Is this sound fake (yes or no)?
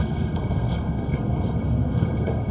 yes